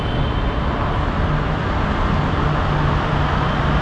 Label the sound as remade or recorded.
recorded